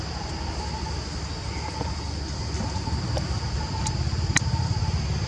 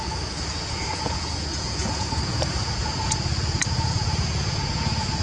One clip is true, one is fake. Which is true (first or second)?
first